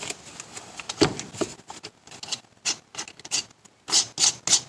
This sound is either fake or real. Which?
real